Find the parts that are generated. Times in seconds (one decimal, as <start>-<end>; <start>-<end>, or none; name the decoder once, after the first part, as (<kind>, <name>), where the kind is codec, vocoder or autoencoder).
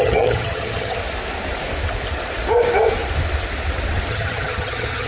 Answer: 0.0-1.0 (vocoder, HiFi-GAN); 4.1-5.1